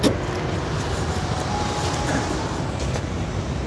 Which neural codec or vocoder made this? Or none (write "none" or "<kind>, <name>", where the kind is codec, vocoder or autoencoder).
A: none